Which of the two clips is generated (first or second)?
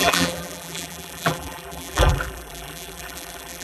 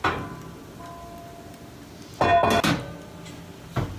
first